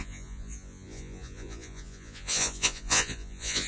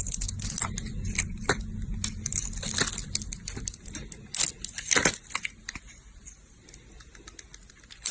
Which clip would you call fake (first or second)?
first